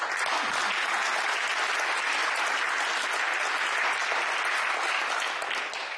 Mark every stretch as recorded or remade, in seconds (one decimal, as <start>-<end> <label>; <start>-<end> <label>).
0.0-6.0 recorded